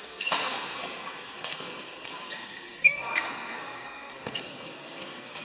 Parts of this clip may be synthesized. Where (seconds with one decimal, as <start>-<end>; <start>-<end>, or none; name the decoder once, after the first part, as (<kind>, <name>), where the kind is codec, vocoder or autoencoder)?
0.0-5.4 (codec, SNAC)